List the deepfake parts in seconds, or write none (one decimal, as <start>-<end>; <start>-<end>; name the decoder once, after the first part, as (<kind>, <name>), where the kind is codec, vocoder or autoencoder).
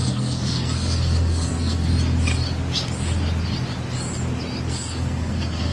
0.0-1.9 (codec, SNAC); 4.7-5.7